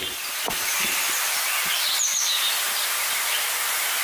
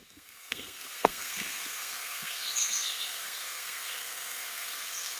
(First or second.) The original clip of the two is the first